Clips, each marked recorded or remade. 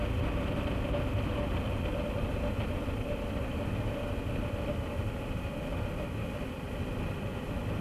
recorded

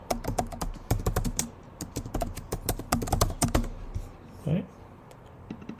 recorded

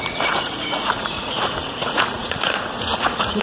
remade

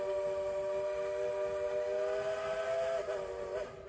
recorded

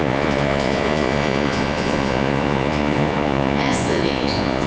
remade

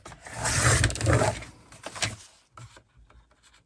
recorded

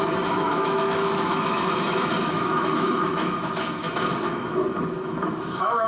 remade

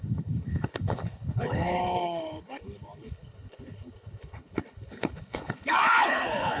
remade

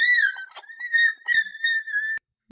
remade